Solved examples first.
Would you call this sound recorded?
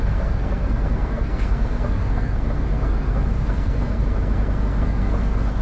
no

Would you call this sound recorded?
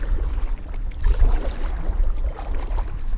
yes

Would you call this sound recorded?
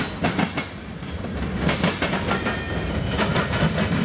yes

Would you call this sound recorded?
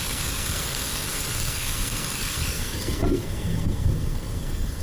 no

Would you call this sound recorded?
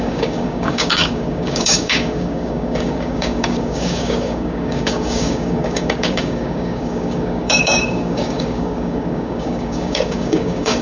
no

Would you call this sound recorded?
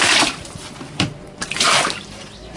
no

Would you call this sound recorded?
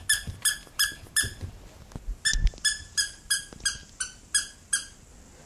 yes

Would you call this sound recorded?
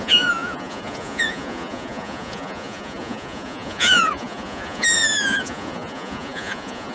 no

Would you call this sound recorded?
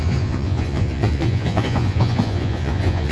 no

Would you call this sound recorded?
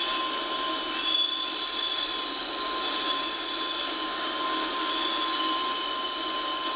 yes